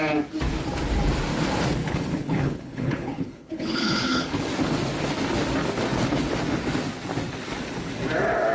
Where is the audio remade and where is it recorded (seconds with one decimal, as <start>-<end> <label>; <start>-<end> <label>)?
0.0-1.8 recorded; 1.8-4.5 remade; 4.5-8.5 recorded